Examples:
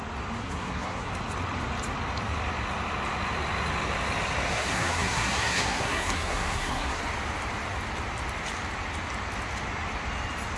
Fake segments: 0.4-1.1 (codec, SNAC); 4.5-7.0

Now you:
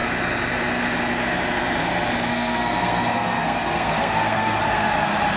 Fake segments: 2.3-4.9 (codec, SNAC)

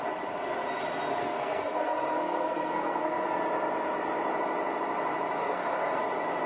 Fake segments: 1.2-3.4 (codec, SNAC); 5.4-6.0

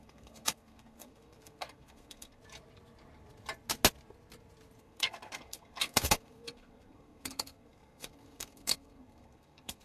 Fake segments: 0.0-2.4 (codec, SNAC); 4.8-9.8

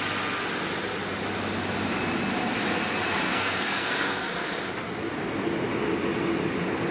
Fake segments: 3.3-4.5 (codec, SNAC)